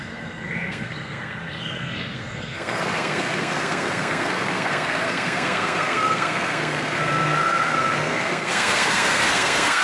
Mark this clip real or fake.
fake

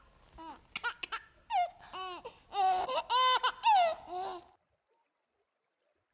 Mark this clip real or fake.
real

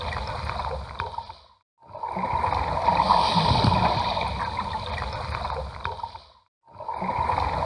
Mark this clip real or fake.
real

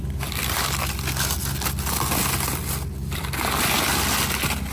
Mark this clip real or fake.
real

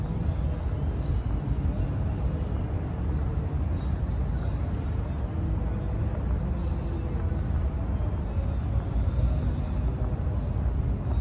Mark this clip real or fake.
real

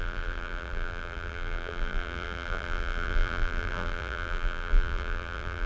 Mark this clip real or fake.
fake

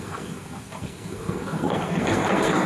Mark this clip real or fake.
fake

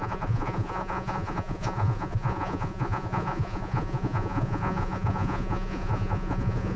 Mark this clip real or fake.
fake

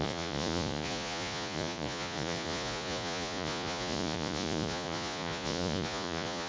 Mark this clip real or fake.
fake